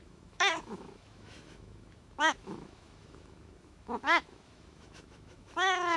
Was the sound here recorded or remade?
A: remade